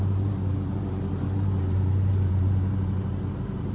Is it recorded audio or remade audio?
remade